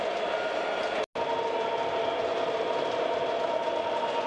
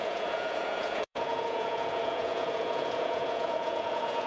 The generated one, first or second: second